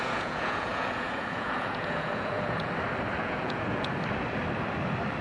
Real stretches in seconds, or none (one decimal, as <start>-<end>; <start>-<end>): 2.7-3.2; 3.9-5.2